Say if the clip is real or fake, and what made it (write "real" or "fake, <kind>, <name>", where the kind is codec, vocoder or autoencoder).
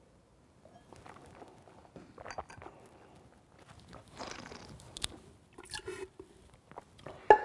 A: real